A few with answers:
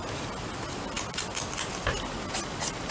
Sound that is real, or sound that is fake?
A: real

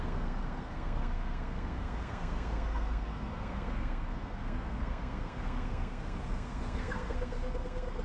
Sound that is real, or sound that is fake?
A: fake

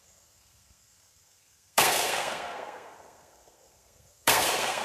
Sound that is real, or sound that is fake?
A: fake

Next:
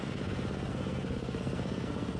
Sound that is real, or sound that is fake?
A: fake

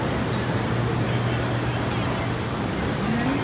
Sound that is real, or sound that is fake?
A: real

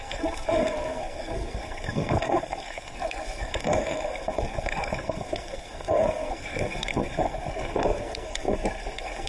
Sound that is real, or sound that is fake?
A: fake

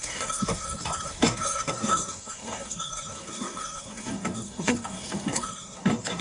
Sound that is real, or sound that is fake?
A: fake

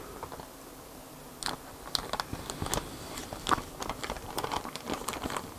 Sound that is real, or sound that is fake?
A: real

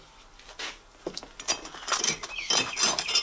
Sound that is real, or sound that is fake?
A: real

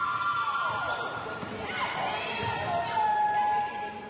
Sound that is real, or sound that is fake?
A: real